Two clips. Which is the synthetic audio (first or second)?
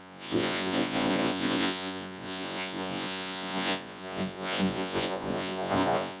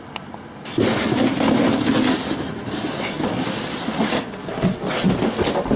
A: first